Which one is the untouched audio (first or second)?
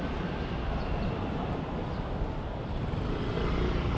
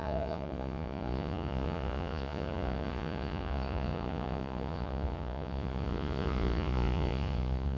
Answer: first